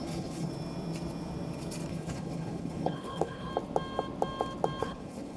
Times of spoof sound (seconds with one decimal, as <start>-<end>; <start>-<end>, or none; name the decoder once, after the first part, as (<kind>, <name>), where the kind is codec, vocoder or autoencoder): 0.0-0.5 (codec, HILCodec); 1.9-3.5; 4.8-5.4